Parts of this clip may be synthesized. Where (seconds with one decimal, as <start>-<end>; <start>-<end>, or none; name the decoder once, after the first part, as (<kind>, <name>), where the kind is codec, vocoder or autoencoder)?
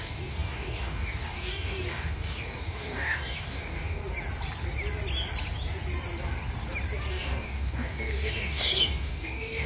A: 0.0-4.0 (codec, DAC); 7.1-9.7